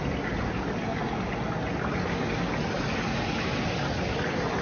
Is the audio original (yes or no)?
yes